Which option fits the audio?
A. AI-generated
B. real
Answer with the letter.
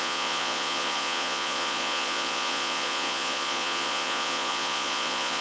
A